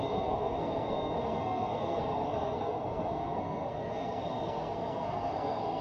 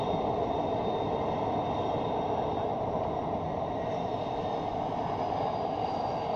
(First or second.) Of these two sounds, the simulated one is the first